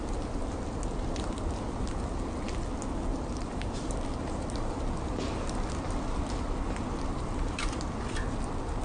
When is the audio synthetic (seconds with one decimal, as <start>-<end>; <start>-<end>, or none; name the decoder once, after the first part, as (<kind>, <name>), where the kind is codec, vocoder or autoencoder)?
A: 3.1-4.7 (vocoder, BigVGAN v2); 7.1-7.6